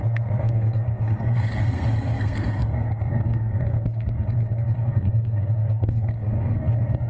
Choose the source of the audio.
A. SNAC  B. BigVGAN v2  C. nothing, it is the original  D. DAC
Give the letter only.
A